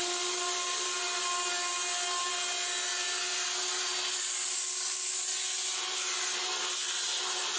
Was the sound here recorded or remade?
recorded